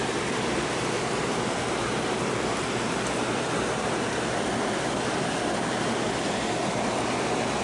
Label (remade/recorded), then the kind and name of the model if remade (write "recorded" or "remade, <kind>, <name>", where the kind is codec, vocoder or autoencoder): remade, vocoder, BigVGAN v2